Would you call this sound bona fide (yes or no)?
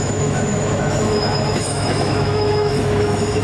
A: no